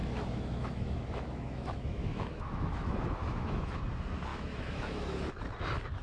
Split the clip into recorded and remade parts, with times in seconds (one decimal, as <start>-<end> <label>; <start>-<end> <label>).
0.0-3.6 remade; 3.6-4.3 recorded; 4.3-5.3 remade; 5.3-6.0 recorded